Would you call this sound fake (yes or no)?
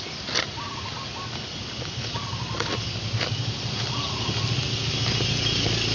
no